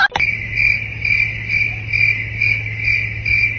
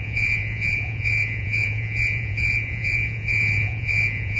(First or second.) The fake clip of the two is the second